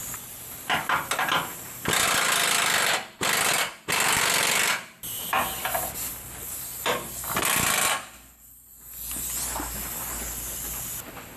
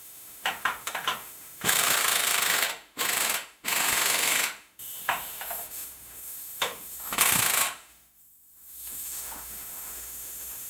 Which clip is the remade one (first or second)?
second